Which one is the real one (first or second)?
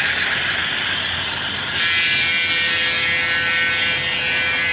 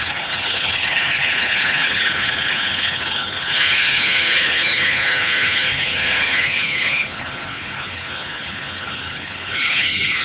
first